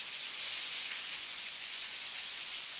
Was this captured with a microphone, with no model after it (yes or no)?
no